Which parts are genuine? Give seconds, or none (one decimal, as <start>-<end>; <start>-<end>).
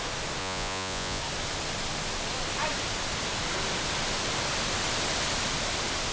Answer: 0.0-0.4; 1.2-6.1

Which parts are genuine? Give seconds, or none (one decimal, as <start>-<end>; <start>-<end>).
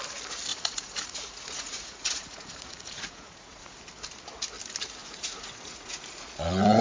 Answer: 0.0-0.5; 3.8-5.0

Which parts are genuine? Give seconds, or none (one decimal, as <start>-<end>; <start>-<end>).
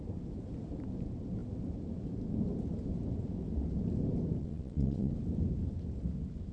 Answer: 0.0-4.4; 5.1-6.5